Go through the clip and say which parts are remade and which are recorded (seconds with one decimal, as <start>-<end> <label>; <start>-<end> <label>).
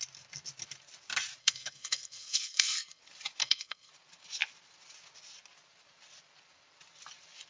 0.0-1.4 recorded; 1.4-3.0 remade; 3.0-3.4 recorded; 3.4-3.9 remade; 3.9-7.5 recorded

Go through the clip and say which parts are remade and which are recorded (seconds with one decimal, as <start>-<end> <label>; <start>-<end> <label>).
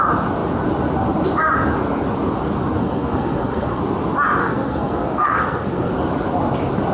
0.0-2.8 recorded; 2.8-3.8 remade; 3.8-4.4 recorded; 4.4-5.9 remade; 5.9-6.9 recorded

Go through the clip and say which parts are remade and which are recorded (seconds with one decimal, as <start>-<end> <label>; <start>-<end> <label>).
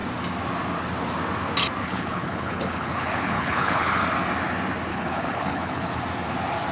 0.0-1.8 recorded; 1.8-4.0 remade; 4.0-4.9 recorded; 4.9-6.0 remade; 6.0-6.7 recorded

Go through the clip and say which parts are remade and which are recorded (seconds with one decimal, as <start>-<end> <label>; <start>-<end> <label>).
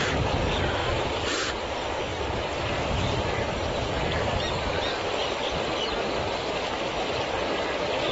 0.0-0.8 recorded; 0.8-1.5 remade; 1.5-2.1 recorded; 2.1-5.0 remade; 5.0-8.1 recorded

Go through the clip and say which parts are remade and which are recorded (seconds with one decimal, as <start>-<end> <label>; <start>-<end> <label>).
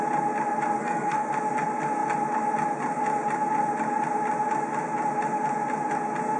0.0-0.8 recorded; 0.8-1.3 remade; 1.3-6.4 recorded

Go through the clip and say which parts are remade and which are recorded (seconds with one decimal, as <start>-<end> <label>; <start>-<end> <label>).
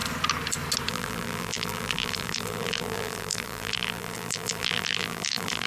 0.0-0.9 recorded; 0.9-5.7 remade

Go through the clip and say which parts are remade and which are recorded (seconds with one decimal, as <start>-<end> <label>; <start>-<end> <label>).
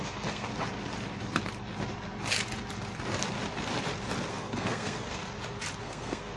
0.0-0.5 remade; 0.5-4.3 recorded; 4.3-5.2 remade; 5.2-5.8 recorded; 5.8-6.4 remade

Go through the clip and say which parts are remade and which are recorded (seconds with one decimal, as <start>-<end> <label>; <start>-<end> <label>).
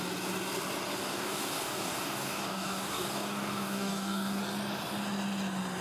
0.0-1.0 recorded; 1.0-4.4 remade; 4.4-5.8 recorded